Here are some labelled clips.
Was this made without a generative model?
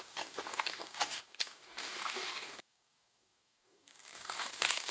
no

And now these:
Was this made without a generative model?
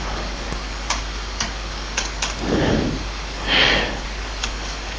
no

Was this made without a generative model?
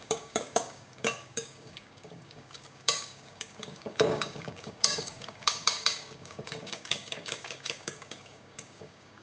no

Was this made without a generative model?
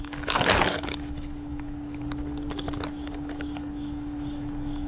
no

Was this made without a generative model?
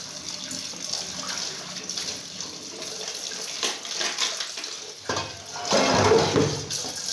yes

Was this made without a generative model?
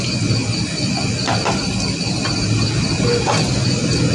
yes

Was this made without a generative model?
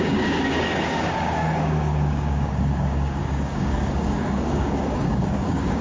no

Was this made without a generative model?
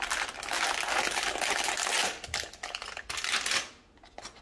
yes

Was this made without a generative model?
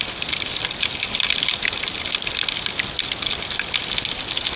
yes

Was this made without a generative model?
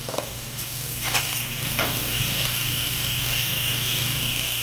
no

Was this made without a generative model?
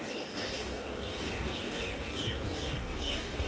no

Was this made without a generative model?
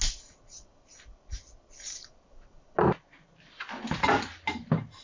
yes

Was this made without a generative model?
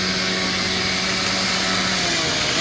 yes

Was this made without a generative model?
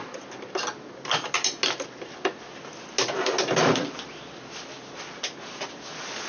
yes